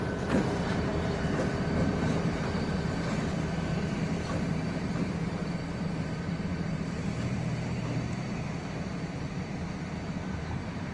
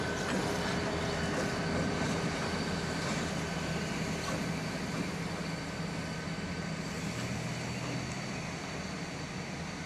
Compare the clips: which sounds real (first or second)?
second